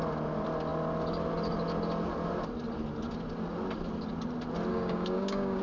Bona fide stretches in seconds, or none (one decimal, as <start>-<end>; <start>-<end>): 0.0-4.7

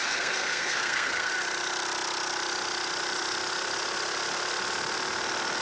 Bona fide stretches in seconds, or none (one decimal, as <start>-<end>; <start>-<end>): 1.3-5.6

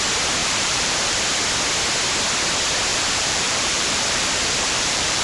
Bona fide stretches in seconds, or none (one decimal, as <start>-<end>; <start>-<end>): 0.0-0.4; 1.4-2.9